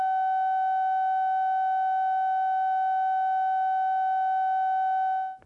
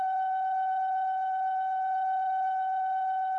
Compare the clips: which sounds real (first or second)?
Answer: first